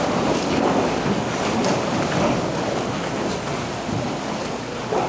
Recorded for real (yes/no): yes